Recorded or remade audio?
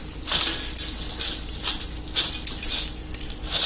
recorded